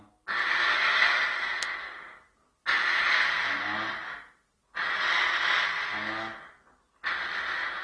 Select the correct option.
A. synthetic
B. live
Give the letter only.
B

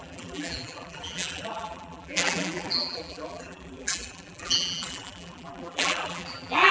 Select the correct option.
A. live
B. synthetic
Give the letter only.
B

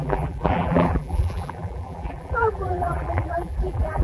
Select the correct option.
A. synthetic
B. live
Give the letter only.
A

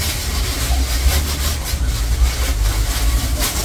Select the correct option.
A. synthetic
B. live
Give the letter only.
B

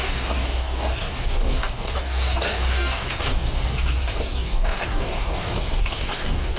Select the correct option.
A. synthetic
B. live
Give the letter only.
A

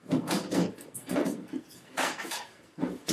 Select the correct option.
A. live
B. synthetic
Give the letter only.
B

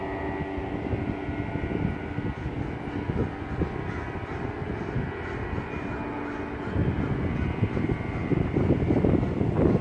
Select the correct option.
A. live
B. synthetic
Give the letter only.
A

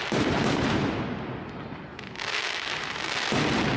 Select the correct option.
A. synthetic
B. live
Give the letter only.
B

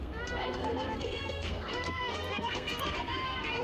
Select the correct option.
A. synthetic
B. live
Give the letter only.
A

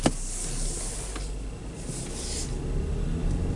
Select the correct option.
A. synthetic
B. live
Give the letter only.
B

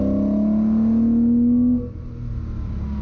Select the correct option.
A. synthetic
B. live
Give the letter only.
B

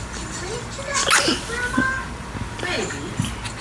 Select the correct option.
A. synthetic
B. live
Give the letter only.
B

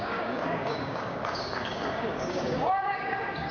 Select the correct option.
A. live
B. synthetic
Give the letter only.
B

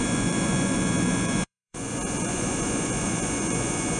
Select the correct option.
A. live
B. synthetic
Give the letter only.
B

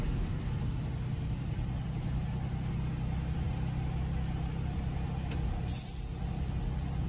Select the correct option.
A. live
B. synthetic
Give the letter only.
A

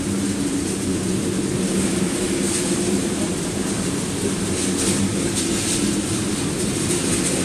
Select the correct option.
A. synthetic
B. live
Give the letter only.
B